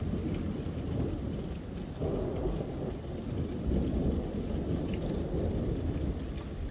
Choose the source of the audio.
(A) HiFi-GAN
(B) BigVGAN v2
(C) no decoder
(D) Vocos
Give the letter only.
C